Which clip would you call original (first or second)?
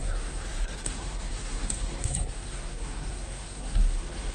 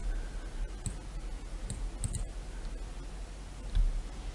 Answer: second